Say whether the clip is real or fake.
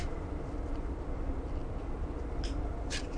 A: real